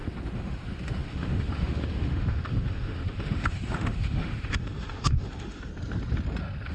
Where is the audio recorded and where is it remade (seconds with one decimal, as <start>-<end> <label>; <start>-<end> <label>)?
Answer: 0.0-5.7 remade; 5.7-6.7 recorded